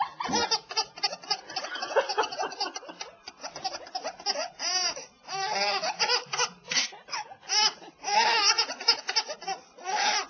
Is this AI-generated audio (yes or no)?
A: no